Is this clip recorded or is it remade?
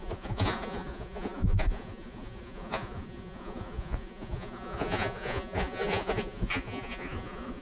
remade